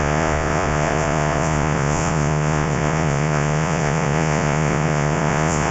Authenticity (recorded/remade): remade